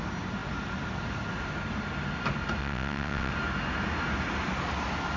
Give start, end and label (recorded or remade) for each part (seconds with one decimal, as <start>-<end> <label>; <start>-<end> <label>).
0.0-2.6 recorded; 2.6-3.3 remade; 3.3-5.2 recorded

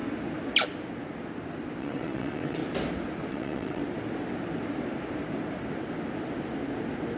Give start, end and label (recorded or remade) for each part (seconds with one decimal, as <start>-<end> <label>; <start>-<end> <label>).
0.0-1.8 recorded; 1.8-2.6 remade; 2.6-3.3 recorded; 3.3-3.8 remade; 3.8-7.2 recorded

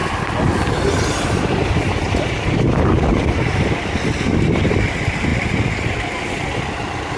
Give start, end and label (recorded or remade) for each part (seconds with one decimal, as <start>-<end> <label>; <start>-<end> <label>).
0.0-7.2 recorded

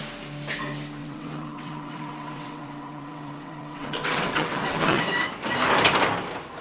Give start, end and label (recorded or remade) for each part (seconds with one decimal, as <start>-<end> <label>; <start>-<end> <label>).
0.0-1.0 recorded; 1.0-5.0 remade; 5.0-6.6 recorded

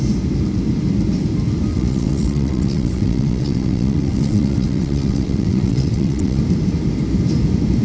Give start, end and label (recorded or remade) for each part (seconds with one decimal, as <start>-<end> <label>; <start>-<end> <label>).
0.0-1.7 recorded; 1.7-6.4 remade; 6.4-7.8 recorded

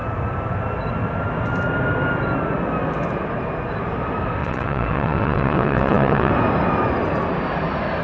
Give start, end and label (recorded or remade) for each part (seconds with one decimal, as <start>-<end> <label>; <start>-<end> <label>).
0.0-4.4 recorded; 4.4-6.3 remade; 6.3-8.0 recorded